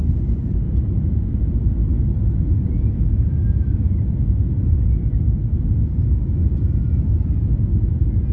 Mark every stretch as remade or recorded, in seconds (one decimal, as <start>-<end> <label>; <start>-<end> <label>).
0.0-8.3 recorded